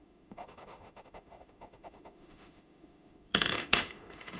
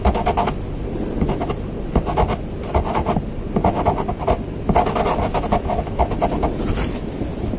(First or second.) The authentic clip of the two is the second